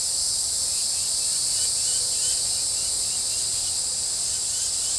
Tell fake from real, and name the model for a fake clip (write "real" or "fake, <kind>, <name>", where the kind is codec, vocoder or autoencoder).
real